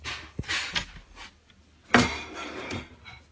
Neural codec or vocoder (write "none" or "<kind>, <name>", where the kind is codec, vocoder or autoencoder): none